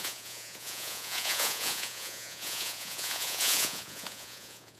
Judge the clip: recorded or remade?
remade